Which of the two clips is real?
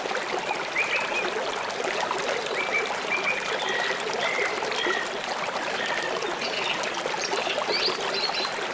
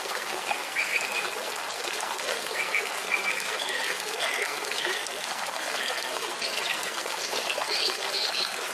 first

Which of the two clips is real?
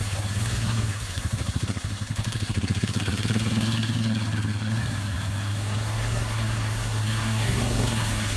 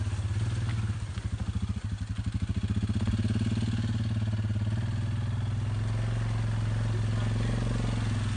second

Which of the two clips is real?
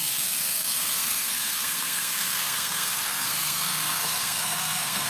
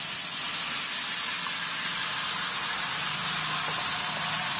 second